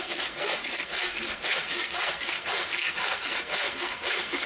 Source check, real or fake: fake